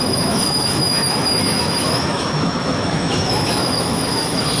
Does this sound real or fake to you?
fake